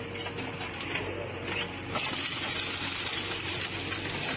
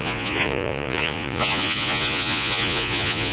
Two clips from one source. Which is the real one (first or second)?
first